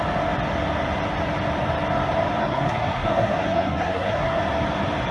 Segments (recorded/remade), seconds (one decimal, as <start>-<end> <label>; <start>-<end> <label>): 0.0-2.4 recorded; 2.4-4.4 remade; 4.4-5.1 recorded